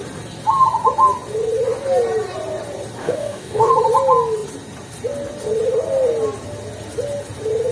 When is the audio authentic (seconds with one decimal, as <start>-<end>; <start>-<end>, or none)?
0.0-3.0; 3.7-7.7